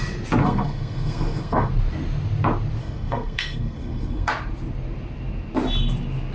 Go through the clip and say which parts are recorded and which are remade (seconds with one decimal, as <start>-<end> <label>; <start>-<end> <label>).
0.0-0.4 recorded; 0.4-1.7 remade; 1.7-2.8 recorded; 2.8-4.3 remade; 4.3-6.3 recorded